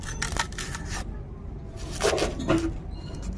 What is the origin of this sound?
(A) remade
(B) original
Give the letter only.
B